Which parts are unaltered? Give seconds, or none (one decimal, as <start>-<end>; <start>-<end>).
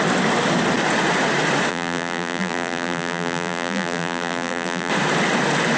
0.0-1.7; 4.9-5.8